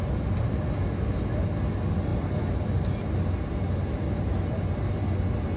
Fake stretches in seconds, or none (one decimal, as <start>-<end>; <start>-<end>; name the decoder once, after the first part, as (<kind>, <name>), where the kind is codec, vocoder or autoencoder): none